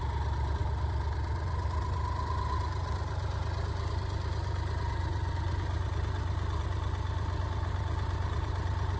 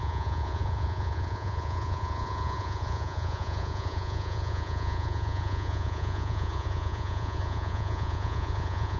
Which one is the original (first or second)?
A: first